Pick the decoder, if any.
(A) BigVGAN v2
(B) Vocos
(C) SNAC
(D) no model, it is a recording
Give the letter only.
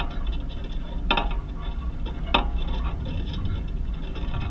D